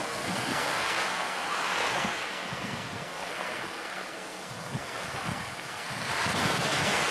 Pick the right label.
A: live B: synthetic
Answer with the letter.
B